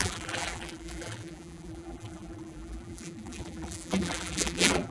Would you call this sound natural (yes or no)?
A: no